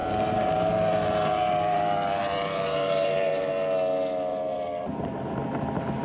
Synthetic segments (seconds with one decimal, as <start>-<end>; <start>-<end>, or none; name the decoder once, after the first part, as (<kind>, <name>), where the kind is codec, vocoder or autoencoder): 0.0-3.5 (vocoder, BigVGAN v2); 4.3-5.4